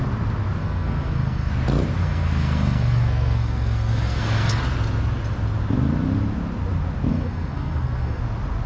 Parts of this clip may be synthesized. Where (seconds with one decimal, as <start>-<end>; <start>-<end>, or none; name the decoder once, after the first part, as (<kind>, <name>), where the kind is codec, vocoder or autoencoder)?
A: 0.6-1.5 (codec, SNAC); 2.0-4.6; 7.1-8.2